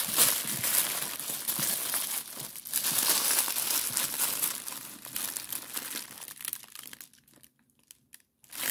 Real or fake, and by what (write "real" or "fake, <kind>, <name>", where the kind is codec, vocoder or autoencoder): real